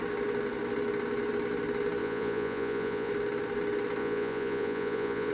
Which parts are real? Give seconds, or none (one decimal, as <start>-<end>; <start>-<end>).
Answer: 0.0-2.0; 3.1-4.0